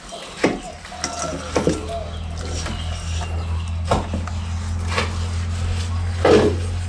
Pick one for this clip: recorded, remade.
recorded